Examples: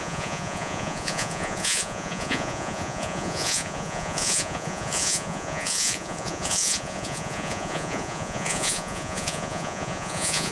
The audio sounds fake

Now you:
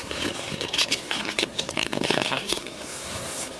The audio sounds fake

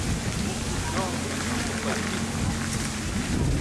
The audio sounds real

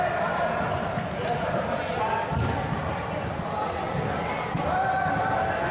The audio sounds real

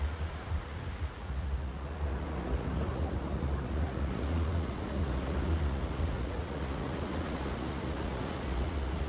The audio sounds fake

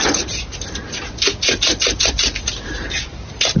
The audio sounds real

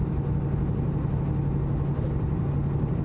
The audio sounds real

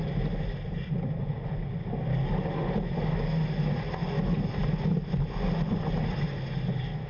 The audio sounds real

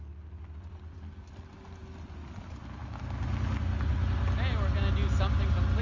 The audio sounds real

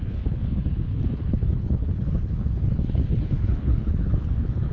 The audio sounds fake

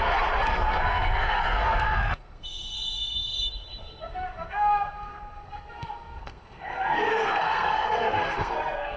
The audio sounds fake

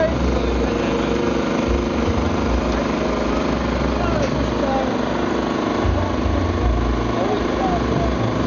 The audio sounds real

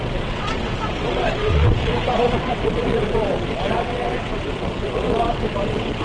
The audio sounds fake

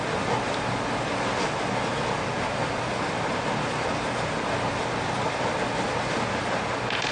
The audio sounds real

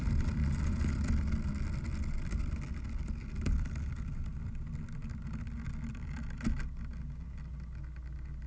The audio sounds real